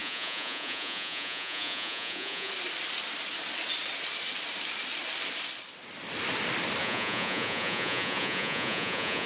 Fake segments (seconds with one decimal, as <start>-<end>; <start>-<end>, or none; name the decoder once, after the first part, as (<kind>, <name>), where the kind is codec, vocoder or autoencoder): 0.0-2.5 (vocoder, Vocos); 6.8-9.3